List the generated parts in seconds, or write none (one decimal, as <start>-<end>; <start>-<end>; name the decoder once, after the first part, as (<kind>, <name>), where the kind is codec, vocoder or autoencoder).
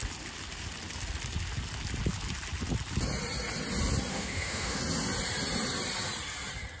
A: 4.1-4.8 (autoencoder, DAC-VAE)